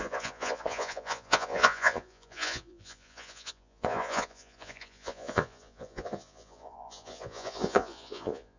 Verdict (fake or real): fake